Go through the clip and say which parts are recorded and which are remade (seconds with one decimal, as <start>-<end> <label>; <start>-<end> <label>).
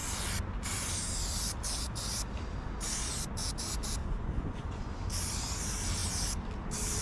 0.0-4.0 recorded; 4.0-4.9 remade; 4.9-7.0 recorded